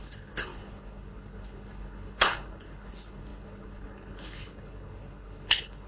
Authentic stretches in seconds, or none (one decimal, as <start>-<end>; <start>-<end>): none